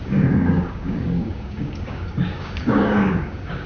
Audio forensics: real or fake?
fake